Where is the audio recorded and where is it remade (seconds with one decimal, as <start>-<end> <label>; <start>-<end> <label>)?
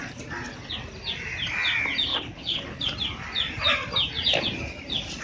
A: 0.0-2.1 recorded; 2.1-2.8 remade; 2.8-5.2 recorded